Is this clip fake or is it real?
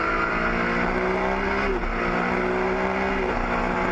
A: real